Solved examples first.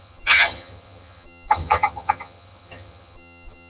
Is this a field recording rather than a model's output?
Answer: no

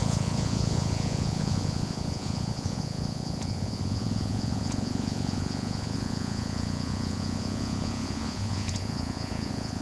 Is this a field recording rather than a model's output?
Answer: no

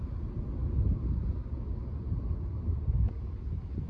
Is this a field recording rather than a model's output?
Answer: yes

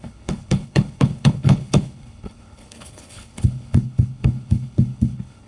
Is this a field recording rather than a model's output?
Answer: no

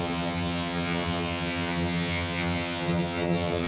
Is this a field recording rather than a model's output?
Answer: no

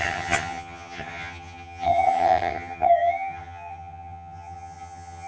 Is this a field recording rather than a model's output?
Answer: no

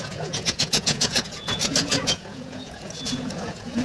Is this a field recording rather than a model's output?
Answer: no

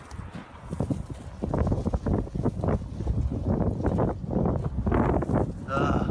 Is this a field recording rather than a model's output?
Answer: yes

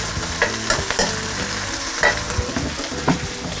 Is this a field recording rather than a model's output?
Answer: yes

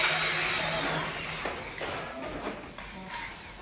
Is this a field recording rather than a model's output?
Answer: yes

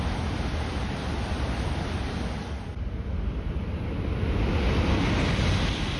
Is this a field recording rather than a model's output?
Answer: yes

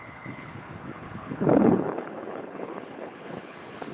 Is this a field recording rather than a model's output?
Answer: no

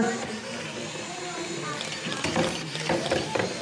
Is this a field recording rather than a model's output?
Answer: yes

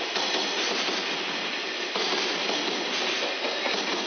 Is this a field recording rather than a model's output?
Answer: yes